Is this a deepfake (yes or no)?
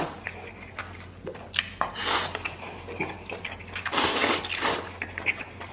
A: no